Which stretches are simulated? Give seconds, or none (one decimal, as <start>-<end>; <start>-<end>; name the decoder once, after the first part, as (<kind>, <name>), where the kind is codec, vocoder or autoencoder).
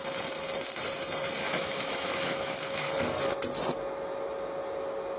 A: 1.4-2.9 (autoencoder, DAC-VAE)